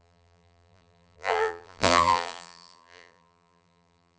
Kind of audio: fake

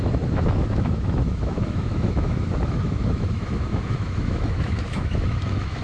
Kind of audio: fake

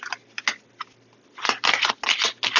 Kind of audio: real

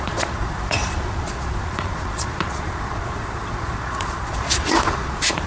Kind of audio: fake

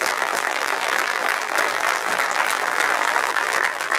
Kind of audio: fake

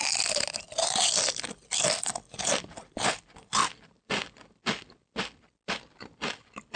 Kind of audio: real